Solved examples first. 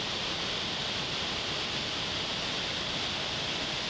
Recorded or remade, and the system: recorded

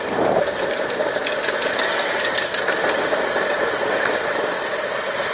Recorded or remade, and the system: recorded